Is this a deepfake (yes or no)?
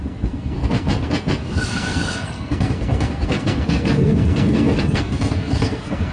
yes